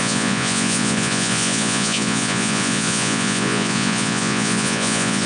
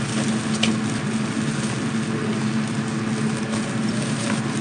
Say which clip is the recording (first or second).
second